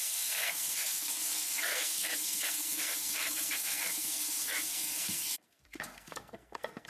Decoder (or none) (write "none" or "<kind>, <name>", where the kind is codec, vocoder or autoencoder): codec, SNAC